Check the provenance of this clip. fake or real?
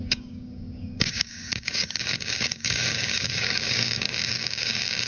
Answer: fake